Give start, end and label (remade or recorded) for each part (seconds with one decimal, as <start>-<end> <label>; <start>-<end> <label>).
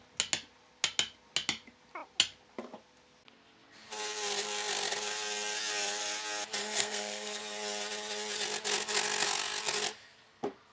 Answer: 0.0-6.6 recorded; 6.6-7.4 remade; 7.4-10.7 recorded